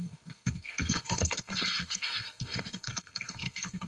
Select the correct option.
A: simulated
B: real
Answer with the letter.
A